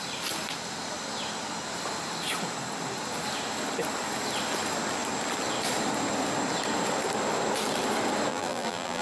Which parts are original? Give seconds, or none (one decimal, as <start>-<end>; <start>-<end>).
0.0-8.3